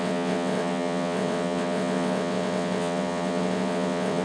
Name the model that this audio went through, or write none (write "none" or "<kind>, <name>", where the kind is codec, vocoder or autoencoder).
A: vocoder, WaveNeXt